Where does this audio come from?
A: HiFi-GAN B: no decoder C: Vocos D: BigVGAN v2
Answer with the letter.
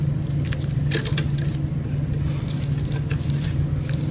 B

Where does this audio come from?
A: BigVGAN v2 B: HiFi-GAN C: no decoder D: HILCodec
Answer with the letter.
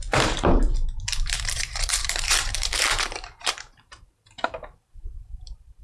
A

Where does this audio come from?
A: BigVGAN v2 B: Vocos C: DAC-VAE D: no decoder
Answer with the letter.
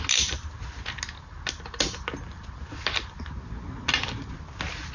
D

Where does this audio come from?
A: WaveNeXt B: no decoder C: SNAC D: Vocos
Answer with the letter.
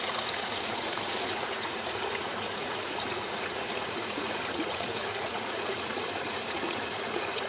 D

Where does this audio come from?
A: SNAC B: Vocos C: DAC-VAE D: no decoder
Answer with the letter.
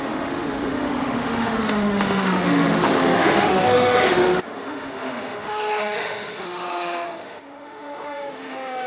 C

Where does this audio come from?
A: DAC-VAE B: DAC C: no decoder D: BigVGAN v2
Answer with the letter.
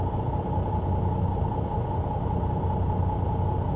D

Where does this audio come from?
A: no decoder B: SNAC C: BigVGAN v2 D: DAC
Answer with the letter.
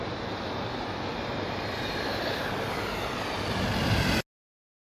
A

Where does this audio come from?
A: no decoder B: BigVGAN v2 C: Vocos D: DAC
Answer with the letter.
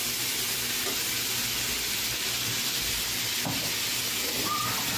A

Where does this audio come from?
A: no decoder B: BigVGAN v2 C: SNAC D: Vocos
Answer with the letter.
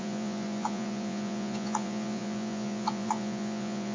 D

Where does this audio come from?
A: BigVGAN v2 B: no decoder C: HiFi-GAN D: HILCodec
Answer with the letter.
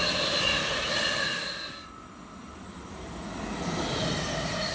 B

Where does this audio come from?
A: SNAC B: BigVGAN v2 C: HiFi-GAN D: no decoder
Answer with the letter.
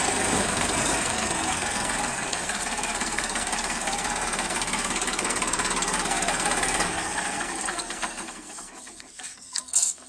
A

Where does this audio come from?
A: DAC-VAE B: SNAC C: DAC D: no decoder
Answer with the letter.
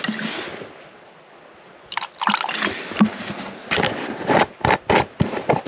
D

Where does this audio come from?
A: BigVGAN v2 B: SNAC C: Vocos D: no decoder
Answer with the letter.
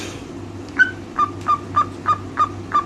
A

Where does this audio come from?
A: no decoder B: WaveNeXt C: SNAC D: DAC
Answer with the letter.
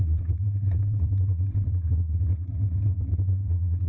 B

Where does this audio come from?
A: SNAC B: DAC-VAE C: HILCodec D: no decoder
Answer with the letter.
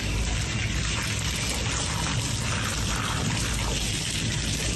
D